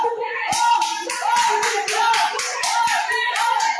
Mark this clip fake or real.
real